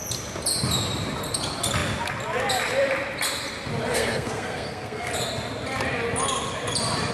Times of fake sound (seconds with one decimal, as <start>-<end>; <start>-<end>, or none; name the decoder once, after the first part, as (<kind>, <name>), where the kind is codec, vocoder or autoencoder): 3.9-5.1 (codec, SNAC)

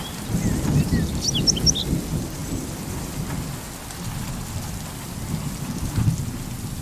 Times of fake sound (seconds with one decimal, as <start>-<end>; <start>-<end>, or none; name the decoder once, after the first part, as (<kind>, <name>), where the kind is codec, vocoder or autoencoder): none

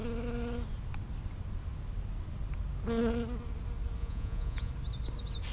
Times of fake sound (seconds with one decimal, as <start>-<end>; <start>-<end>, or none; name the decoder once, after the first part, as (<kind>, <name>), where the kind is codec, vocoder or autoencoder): 4.0-4.7 (vocoder, Vocos)

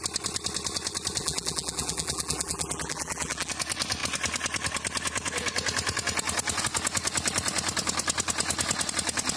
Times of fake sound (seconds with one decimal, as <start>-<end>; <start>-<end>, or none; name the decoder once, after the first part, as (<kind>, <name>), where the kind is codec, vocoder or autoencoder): 1.2-3.5 (vocoder, BigVGAN v2)

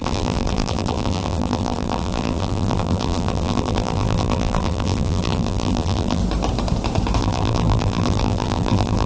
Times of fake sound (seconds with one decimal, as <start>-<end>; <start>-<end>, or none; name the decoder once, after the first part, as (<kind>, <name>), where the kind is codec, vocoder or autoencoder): 0.0-6.2 (vocoder, BigVGAN v2); 7.2-9.1

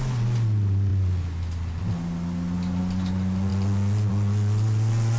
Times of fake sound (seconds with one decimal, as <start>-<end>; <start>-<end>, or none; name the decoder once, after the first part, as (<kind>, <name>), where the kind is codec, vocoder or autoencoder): none

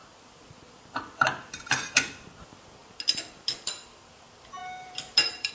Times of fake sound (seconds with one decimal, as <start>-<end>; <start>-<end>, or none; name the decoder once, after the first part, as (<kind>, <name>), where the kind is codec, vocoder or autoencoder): 4.6-5.5 (vocoder, BigVGAN v2)